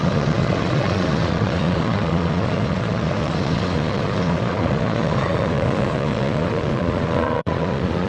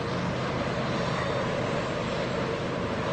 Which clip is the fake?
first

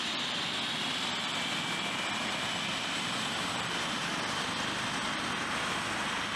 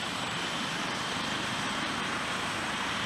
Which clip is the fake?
second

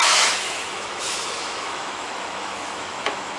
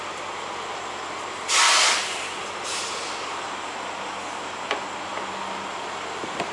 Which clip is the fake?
first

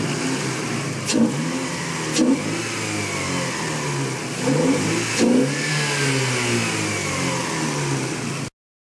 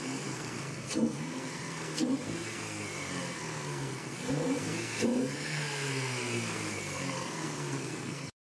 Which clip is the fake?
second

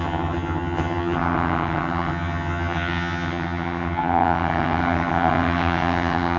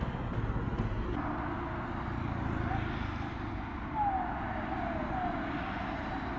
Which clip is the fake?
first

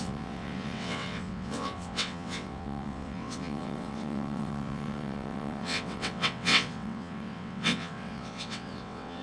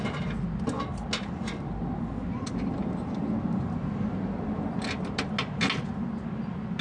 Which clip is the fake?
first